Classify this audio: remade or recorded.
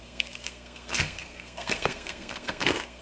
remade